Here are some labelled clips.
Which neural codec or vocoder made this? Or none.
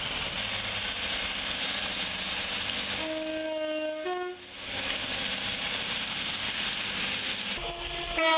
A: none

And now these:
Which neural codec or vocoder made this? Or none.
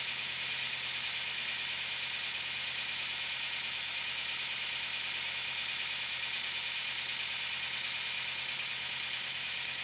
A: autoencoder, DAC-VAE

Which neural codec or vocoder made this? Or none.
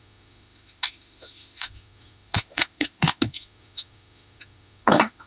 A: autoencoder, DAC-VAE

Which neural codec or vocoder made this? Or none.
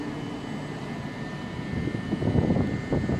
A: none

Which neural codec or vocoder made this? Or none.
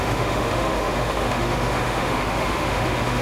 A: autoencoder, DAC-VAE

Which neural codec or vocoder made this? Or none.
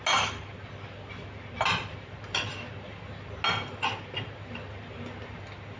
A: none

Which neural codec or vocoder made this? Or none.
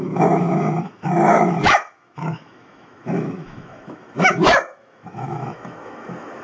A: autoencoder, DAC-VAE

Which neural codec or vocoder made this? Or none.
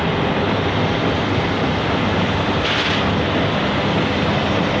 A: none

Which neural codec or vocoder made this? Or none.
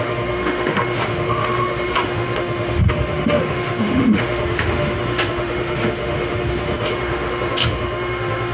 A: autoencoder, DAC-VAE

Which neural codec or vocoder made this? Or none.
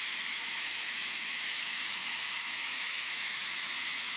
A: autoencoder, DAC-VAE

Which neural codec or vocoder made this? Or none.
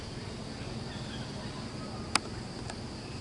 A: none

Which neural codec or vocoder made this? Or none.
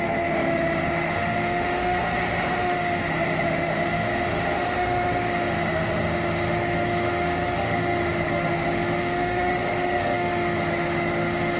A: autoencoder, DAC-VAE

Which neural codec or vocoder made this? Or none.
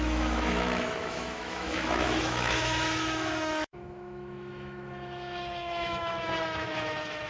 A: autoencoder, DAC-VAE